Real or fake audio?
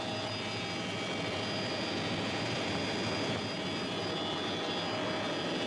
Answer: real